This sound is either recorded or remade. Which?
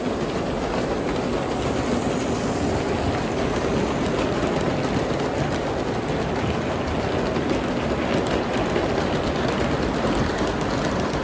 recorded